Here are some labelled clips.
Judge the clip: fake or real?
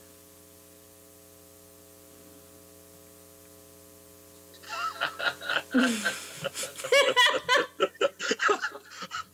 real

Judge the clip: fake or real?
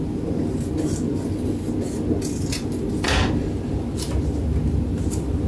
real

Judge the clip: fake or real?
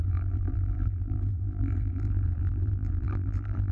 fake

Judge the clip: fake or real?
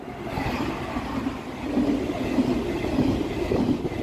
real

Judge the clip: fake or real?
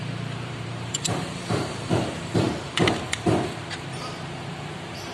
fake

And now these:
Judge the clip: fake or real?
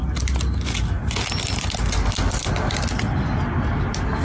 real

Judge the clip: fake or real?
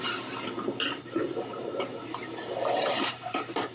fake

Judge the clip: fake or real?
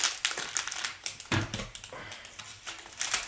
real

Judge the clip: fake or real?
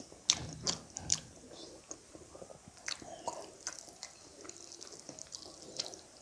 real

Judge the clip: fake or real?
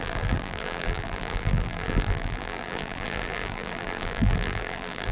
fake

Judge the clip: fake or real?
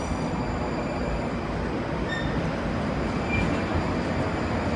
real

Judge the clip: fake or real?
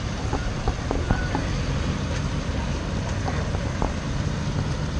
fake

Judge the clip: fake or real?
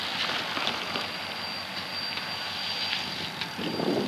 real